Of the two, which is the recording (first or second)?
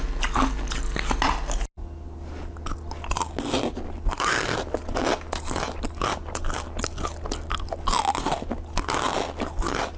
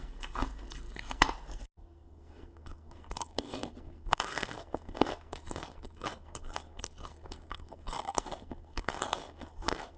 first